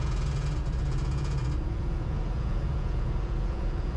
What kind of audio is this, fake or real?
fake